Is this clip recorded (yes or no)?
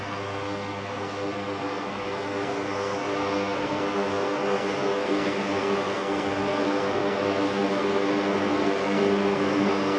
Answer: no